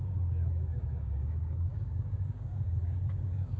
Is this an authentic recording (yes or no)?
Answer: no